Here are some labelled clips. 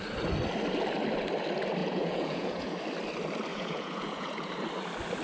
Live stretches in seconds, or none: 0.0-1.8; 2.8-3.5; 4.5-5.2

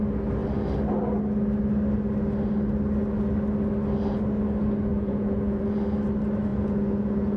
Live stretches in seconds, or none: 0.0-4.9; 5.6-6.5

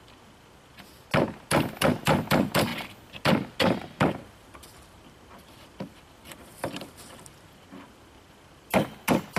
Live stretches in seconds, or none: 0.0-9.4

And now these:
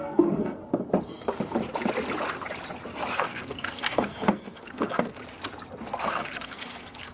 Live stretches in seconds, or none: 0.6-3.1; 5.2-6.0